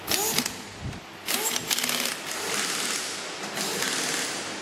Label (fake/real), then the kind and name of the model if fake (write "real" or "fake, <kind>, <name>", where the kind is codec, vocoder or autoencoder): real